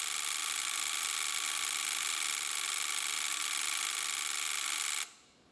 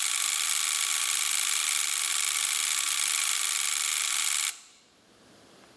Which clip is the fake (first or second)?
second